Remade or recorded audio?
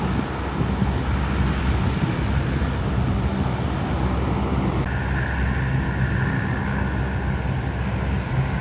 recorded